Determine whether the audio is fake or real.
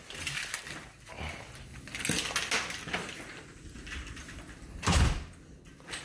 real